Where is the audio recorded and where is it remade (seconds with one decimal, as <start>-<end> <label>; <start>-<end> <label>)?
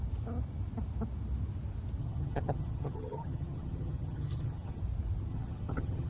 0.0-2.0 recorded; 2.0-4.8 remade; 4.8-5.3 recorded; 5.3-6.1 remade